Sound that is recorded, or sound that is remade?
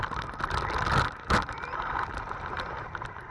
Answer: recorded